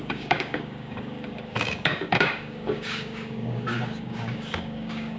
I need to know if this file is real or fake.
fake